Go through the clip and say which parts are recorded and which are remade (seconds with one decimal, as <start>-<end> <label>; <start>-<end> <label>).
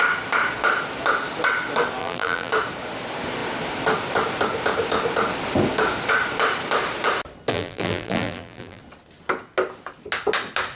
0.0-2.0 recorded; 2.0-2.5 remade; 2.5-7.5 recorded; 7.5-8.8 remade; 8.8-10.8 recorded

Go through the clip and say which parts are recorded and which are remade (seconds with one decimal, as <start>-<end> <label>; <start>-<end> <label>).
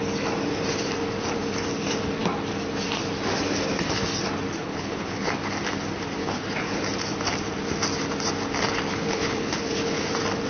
0.0-4.6 recorded; 4.6-5.3 remade; 5.3-6.2 recorded; 6.2-6.8 remade; 6.8-8.9 recorded; 8.9-10.0 remade; 10.0-10.5 recorded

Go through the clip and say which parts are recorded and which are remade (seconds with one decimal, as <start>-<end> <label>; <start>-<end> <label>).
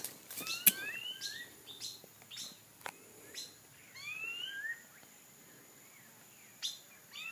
0.0-7.3 recorded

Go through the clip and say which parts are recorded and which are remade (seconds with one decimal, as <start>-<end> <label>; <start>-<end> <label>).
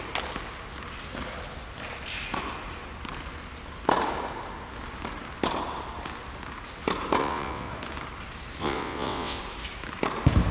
0.0-7.2 recorded; 7.2-7.7 remade; 7.7-8.6 recorded; 8.6-9.4 remade; 9.4-10.5 recorded